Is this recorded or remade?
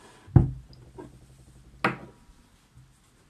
recorded